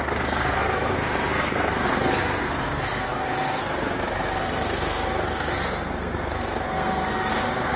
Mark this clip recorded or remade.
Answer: remade